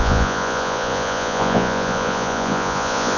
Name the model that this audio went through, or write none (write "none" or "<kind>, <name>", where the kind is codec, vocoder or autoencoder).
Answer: vocoder, Vocos